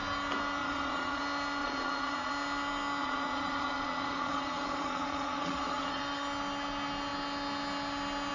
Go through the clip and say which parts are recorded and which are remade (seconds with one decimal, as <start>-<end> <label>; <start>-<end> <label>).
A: 0.0-0.6 recorded; 0.6-1.2 remade; 1.2-1.6 recorded; 1.6-2.3 remade; 2.3-3.0 recorded; 3.0-6.0 remade; 6.0-8.3 recorded